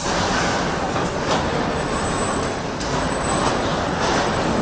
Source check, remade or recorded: recorded